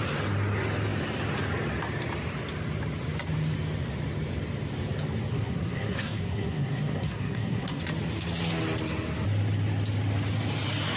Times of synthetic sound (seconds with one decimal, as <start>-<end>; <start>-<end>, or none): 5.3-7.8